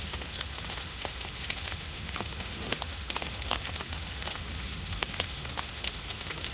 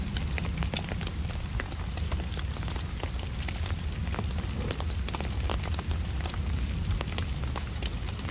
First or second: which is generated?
first